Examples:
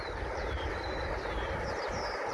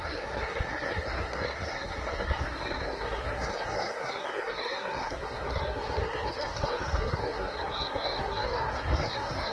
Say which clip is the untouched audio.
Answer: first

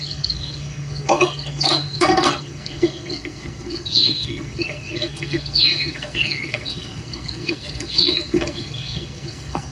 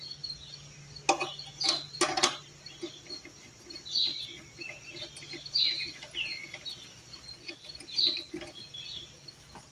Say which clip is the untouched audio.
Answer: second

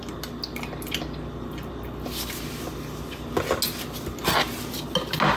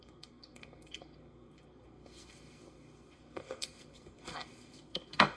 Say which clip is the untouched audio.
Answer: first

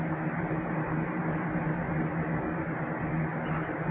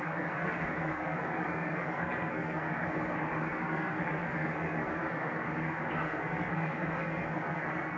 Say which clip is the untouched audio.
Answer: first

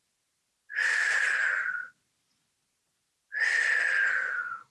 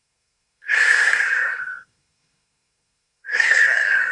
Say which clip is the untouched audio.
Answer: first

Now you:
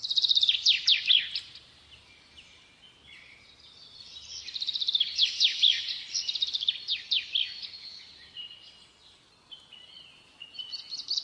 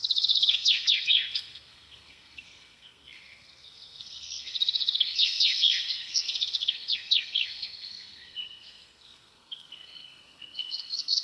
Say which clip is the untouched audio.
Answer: first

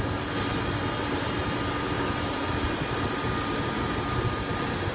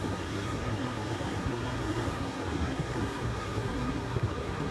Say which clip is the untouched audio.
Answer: first